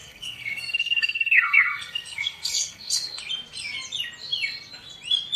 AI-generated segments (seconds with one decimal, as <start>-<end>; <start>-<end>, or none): 0.0-3.2